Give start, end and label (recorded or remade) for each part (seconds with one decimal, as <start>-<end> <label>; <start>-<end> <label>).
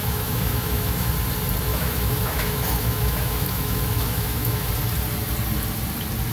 0.0-1.1 remade; 1.1-1.7 recorded; 1.7-4.7 remade; 4.7-6.3 recorded